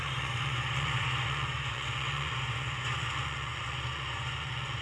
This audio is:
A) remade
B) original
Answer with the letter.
A